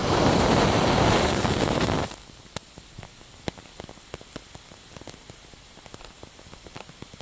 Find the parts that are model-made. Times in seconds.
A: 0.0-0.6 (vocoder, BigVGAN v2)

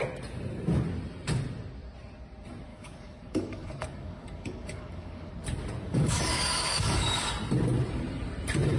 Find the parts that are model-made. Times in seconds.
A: 2.7-5.3 (codec, DAC); 5.9-7.3

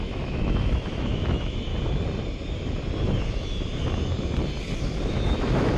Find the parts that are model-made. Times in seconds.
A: 0.0-1.7 (autoencoder, DAC-VAE); 4.8-5.8

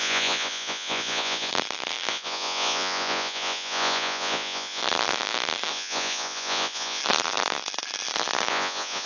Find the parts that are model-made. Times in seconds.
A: 0.0-1.5 (vocoder, Vocos); 2.1-4.8; 5.7-7.0; 8.5-9.1

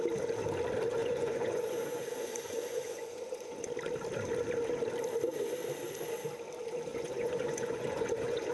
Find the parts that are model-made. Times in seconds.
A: 1.0-3.7 (vocoder, Vocos); 6.9-8.5